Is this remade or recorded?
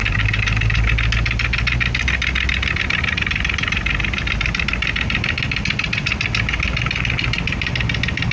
recorded